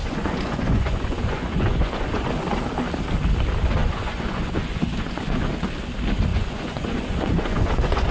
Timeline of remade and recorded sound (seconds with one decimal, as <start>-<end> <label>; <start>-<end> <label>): 0.0-2.3 remade; 2.3-3.8 recorded; 3.8-5.5 remade; 5.5-6.3 recorded; 6.3-8.1 remade